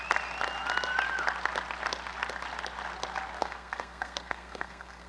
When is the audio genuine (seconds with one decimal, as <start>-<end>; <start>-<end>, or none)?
0.0-3.4